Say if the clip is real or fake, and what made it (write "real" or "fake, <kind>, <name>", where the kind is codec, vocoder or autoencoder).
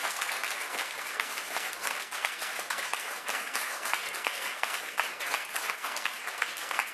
fake, codec, SNAC